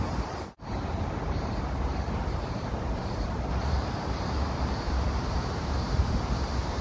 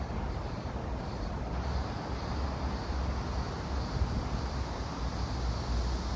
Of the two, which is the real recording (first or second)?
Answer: second